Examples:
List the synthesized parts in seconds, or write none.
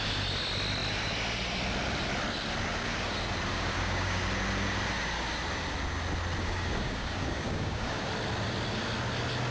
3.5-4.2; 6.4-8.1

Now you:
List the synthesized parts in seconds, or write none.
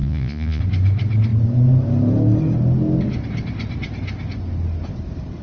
0.0-0.6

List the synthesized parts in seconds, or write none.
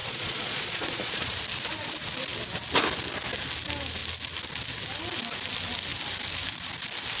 0.0-1.4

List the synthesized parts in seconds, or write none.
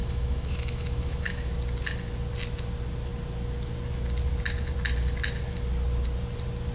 0.0-1.5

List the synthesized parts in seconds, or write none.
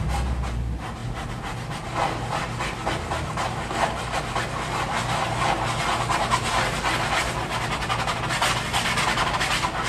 none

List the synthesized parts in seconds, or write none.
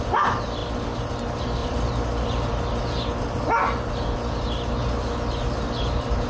0.6-1.1; 1.6-2.8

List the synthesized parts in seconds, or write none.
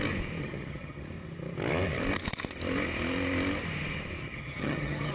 0.4-1.0; 4.2-5.1